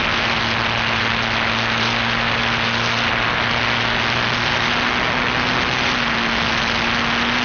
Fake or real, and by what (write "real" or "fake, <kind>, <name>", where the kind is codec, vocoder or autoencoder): real